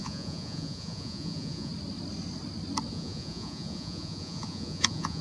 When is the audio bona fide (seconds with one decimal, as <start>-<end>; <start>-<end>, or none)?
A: 1.7-2.9